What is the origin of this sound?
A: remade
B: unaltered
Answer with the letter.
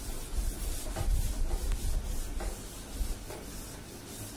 B